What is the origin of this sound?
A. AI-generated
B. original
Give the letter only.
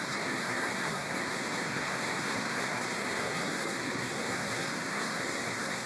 A